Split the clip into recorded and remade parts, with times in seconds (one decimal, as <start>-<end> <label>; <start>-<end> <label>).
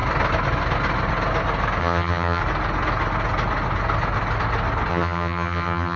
0.0-1.8 recorded; 1.8-2.4 remade; 2.4-4.9 recorded; 4.9-6.0 remade